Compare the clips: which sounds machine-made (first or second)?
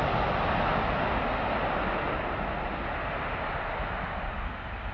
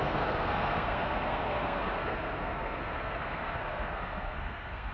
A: second